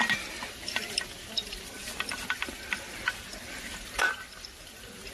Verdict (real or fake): real